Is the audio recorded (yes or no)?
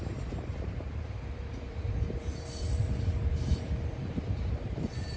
no